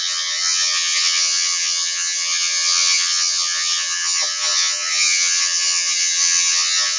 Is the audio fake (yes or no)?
yes